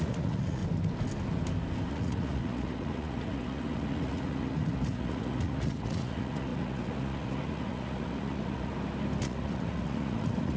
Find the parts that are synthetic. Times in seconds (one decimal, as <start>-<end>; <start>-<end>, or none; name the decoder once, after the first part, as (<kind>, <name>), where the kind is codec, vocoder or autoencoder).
0.0-0.6 (vocoder, Vocos); 1.9-8.7; 9.2-10.6